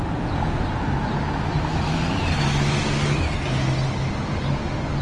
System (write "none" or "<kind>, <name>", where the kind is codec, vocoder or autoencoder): none